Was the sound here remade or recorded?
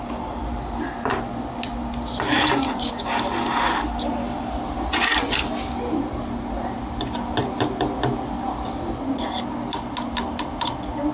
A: recorded